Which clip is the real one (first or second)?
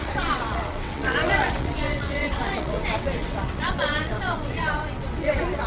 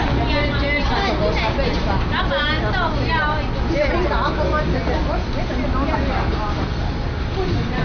second